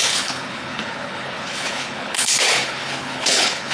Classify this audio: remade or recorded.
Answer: remade